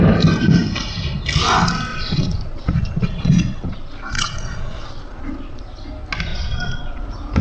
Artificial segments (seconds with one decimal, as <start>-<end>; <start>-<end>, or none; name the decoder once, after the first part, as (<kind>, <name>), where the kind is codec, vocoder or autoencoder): 1.9-5.6 (vocoder, Vocos); 6.3-7.0